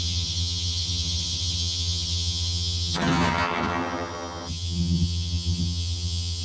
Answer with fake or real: fake